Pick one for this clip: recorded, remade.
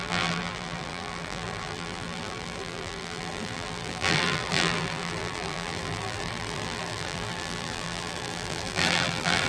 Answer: remade